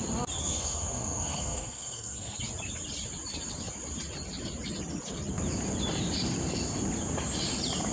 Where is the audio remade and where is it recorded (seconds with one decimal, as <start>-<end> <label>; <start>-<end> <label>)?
0.0-0.4 recorded; 0.4-2.4 remade; 2.4-7.9 recorded